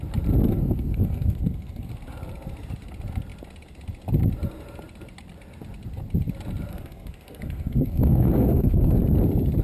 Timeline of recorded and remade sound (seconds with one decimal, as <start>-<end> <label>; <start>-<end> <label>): 0.0-0.5 recorded; 0.5-1.9 remade; 1.9-6.7 recorded; 6.7-9.0 remade; 9.0-9.6 recorded